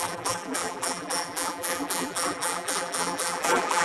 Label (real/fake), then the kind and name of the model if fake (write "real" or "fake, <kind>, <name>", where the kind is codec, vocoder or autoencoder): fake, vocoder, BigVGAN v2